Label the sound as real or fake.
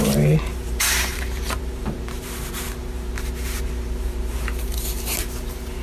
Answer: fake